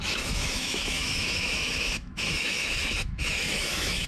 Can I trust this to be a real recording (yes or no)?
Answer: no